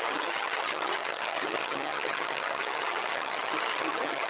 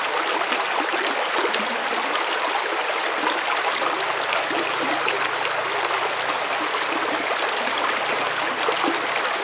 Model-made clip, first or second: first